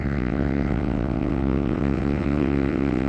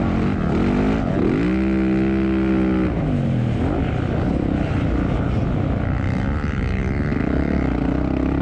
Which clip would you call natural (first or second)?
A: second